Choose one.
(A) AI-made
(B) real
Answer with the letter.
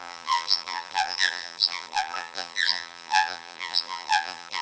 A